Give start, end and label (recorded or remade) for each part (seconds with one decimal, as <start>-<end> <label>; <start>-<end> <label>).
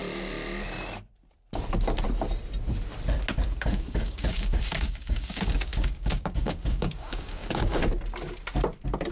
0.0-3.6 recorded; 3.6-7.8 remade; 7.8-9.1 recorded